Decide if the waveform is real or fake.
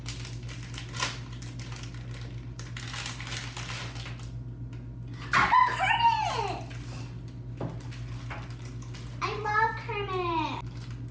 real